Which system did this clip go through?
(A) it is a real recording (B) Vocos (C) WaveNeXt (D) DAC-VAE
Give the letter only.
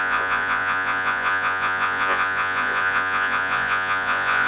B